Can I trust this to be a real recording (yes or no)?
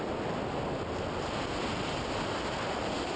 yes